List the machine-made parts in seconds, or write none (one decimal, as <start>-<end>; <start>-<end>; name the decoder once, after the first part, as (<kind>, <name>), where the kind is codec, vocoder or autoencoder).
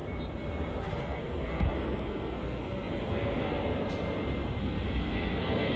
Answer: 0.8-3.5 (codec, SNAC); 4.6-5.8